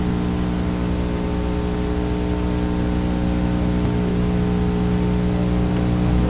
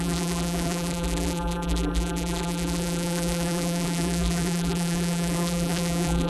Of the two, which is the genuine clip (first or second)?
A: first